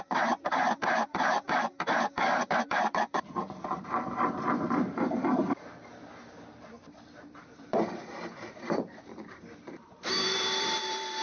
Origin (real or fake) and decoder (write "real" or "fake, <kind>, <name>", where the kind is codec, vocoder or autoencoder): fake, vocoder, BigVGAN v2